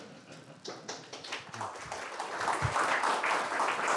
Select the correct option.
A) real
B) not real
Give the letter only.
A